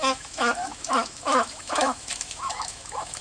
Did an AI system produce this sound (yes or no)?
yes